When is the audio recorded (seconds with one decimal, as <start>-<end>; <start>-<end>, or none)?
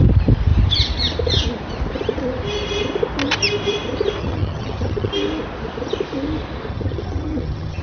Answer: 0.0-4.2; 5.1-6.7